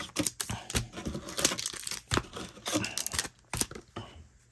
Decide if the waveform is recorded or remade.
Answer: recorded